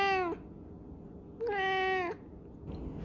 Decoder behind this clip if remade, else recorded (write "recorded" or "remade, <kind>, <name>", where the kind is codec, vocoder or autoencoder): recorded